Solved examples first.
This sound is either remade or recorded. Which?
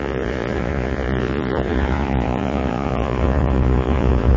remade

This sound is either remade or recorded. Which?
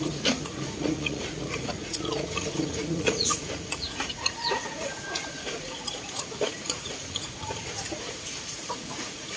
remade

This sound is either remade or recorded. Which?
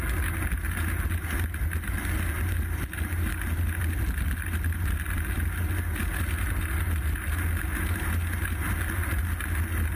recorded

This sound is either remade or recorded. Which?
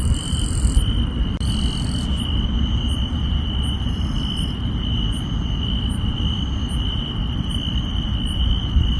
recorded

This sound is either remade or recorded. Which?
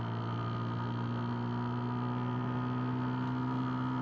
recorded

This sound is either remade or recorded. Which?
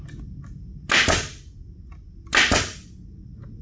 recorded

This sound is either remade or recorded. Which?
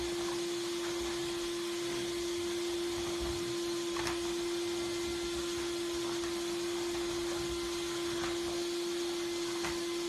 recorded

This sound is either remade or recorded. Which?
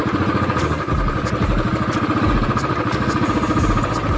recorded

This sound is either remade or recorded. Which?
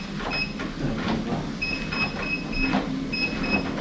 recorded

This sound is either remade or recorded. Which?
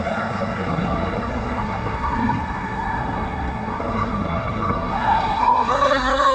remade